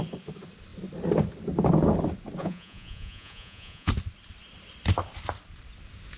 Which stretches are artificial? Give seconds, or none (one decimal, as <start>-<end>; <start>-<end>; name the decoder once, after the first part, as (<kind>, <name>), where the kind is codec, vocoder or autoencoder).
2.4-3.9 (vocoder, Vocos)